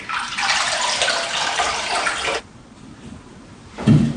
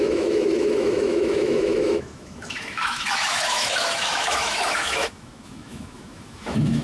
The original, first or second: first